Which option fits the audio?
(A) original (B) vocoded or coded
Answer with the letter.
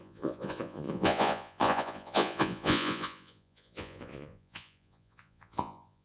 B